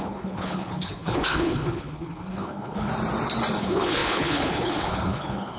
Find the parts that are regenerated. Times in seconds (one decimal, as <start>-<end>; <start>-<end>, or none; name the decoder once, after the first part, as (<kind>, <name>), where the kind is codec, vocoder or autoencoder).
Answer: 0.0-2.9 (codec, HILCodec); 3.6-5.6